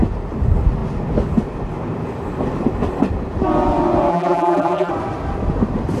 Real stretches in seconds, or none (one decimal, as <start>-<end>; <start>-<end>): 0.0-4.1; 4.9-6.0